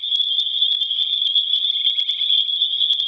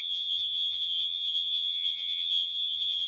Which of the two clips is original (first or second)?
first